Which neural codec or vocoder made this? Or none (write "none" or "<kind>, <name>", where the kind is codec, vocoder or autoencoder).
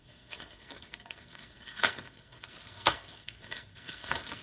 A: codec, SNAC